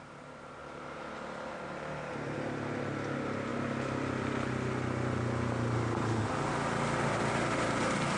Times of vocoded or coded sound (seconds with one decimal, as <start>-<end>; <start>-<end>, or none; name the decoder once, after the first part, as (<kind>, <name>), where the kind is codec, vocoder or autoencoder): none